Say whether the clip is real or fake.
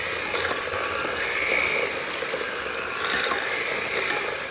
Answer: real